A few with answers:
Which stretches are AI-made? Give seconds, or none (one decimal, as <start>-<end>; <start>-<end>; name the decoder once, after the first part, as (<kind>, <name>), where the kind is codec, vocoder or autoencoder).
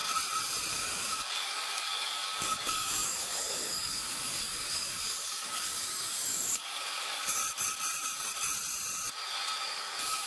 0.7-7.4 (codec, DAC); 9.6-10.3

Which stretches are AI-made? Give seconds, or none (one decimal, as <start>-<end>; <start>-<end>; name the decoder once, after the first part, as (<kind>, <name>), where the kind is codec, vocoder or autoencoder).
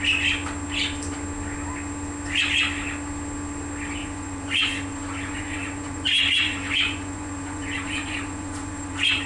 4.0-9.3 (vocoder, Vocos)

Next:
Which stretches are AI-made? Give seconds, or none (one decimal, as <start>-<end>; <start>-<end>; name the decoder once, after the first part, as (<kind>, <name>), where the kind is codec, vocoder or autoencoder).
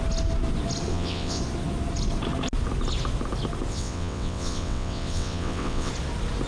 0.9-1.4 (vocoder, WaveNeXt); 3.7-5.9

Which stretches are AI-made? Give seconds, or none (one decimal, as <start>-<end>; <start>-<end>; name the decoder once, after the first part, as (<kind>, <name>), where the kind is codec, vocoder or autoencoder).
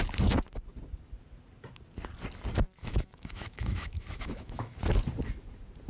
2.8-4.8 (autoencoder, DAC-VAE)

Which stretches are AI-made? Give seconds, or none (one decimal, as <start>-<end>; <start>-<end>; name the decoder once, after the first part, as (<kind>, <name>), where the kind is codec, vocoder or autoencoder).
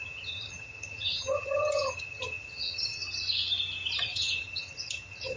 0.0-3.0 (vocoder, HiFi-GAN); 4.0-5.4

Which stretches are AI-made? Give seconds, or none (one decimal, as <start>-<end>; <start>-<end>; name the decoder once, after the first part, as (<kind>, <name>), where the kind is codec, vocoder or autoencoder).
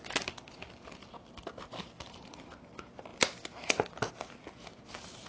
none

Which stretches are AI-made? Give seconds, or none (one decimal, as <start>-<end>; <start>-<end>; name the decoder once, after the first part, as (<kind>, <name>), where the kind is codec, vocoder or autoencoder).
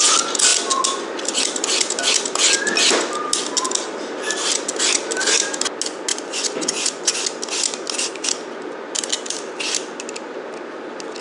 6.1-7.2 (vocoder, Vocos)